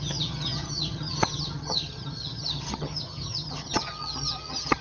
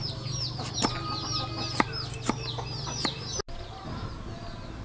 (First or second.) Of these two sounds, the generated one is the first